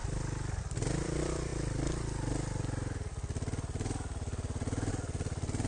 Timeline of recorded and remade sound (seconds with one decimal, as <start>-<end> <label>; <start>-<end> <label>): 0.0-1.5 remade; 1.5-4.9 recorded; 4.9-5.7 remade